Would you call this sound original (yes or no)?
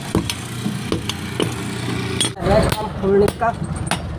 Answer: yes